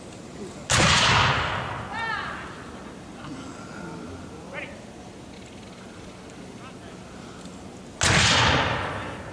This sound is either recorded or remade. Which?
recorded